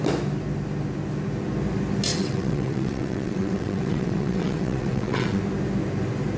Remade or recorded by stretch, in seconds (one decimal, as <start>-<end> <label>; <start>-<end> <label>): 0.0-2.1 recorded; 2.1-5.4 remade; 5.4-6.4 recorded